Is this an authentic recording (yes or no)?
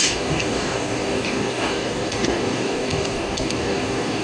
no